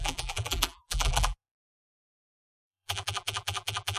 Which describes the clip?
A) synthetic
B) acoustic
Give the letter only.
A